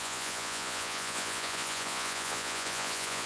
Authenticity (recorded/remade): remade